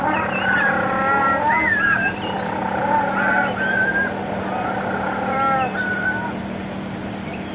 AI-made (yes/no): no